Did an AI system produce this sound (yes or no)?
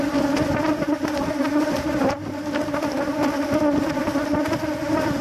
yes